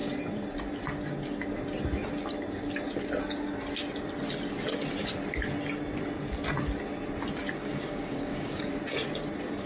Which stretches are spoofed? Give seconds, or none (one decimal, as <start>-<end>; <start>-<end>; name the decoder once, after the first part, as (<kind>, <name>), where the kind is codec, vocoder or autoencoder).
7.7-8.6 (codec, DAC)